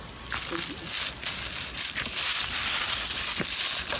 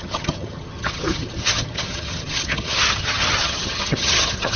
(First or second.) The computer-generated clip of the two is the second